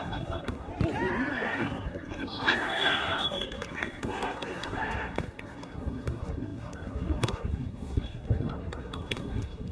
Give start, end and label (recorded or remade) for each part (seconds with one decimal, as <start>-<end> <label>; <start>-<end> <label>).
0.0-0.7 remade; 0.7-1.3 recorded; 1.3-9.7 remade